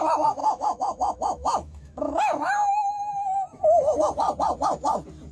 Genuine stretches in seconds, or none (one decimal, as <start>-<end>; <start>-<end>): 0.0-0.4; 3.6-5.3